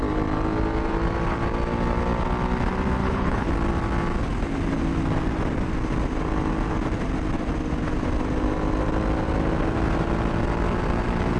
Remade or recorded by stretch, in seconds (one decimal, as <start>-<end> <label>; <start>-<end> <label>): 0.0-3.0 recorded; 3.0-3.5 remade; 3.5-11.4 recorded